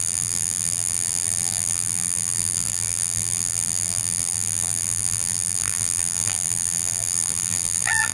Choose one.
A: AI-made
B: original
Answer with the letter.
A